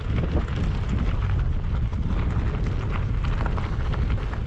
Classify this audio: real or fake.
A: real